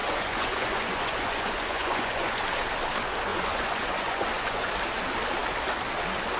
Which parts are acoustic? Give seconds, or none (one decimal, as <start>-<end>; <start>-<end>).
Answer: 2.4-3.3; 4.7-6.4